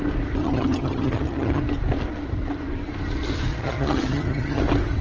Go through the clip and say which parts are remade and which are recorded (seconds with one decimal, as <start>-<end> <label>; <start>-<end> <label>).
0.0-0.4 recorded; 0.4-1.6 remade; 1.6-3.5 recorded; 3.5-4.6 remade; 4.6-5.0 recorded